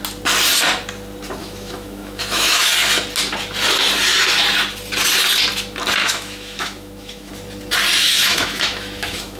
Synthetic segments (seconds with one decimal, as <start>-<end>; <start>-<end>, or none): 1.4-2.7; 6.0-7.3; 8.0-9.4